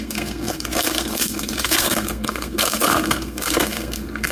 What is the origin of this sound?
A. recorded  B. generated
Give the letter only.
B